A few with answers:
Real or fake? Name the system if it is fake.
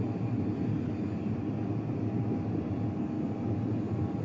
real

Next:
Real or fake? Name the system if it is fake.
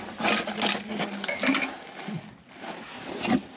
real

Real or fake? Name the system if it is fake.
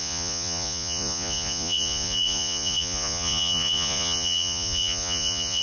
fake, vocoder, Vocos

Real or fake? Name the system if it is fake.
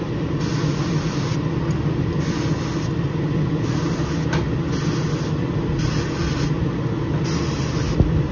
real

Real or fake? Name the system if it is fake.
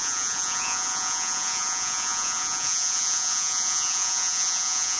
fake, vocoder, Vocos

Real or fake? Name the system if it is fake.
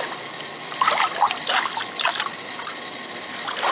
real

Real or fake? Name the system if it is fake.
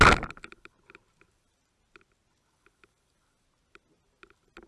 real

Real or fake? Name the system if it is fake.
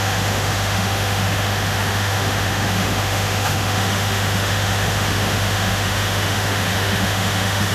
fake, autoencoder, DAC-VAE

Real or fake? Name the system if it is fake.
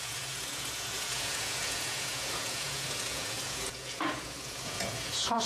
fake, vocoder, Vocos